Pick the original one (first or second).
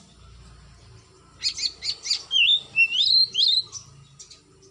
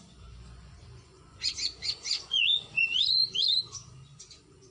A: first